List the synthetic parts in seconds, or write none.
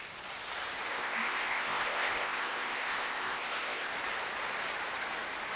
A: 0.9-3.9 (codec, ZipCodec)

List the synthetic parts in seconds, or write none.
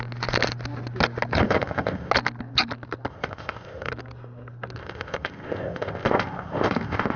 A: 1.4-2.1 (codec, ZipCodec); 3.1-3.9; 4.8-7.2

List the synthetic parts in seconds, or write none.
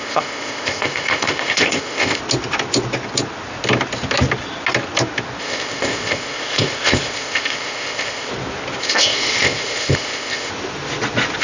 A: 0.0-2.2 (codec, ZipCodec); 5.4-8.3; 8.8-10.5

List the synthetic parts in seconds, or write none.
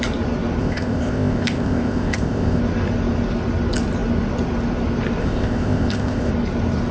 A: 0.6-2.6 (codec, ZipCodec); 5.2-6.3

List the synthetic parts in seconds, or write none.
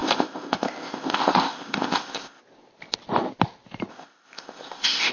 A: 0.0-2.4 (codec, ZipCodec); 3.9-5.1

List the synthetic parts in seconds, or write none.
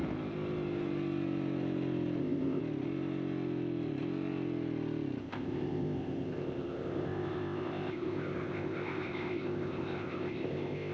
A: 2.2-2.6 (codec, ZipCodec); 5.2-10.9